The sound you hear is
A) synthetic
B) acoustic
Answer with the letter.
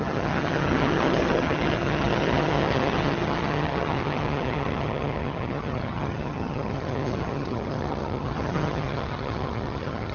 A